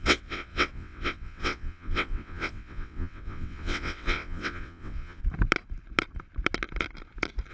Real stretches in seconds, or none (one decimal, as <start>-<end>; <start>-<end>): 5.2-7.5